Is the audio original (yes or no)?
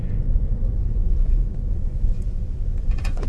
no